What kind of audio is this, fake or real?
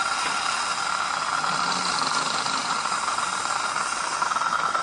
real